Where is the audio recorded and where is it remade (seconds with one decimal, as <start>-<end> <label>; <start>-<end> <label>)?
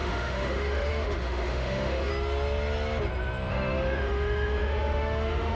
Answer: 0.0-2.1 remade; 2.1-3.5 recorded; 3.5-5.5 remade